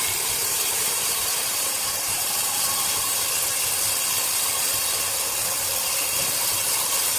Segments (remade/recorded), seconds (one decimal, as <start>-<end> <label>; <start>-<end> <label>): 0.0-0.4 recorded; 0.4-2.3 remade; 2.3-7.2 recorded